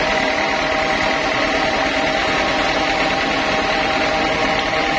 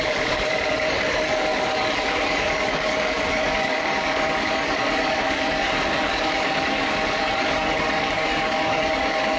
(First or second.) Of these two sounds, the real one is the first